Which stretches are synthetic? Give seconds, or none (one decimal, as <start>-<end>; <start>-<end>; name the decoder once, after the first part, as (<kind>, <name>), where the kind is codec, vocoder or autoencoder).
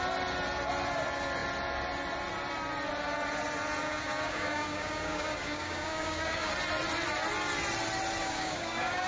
3.8-6.5 (codec, DAC); 8.2-9.1